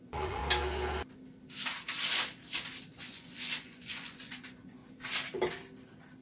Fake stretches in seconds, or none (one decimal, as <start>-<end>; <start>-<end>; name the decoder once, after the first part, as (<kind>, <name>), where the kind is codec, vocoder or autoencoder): 0.0-0.4 (vocoder, Vocos); 2.9-4.8